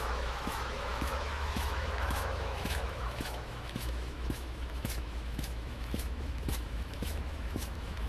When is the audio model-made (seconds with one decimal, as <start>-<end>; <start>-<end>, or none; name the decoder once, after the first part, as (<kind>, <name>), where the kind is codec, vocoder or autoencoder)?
0.0-8.1 (autoencoder, DAC-VAE)